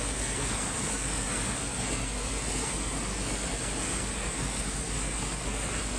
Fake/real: fake